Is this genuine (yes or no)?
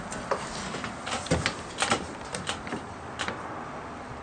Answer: yes